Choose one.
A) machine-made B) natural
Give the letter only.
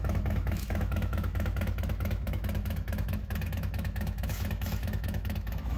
A